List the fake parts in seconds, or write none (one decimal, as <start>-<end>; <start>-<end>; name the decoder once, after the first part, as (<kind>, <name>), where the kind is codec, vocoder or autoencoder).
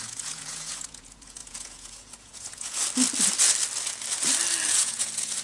0.0-2.8 (vocoder, Vocos); 4.7-5.4